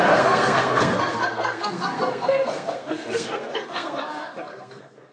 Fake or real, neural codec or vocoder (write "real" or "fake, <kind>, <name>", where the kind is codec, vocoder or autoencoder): fake, codec, SNAC